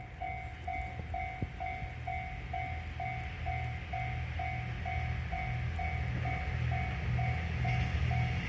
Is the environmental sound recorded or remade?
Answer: recorded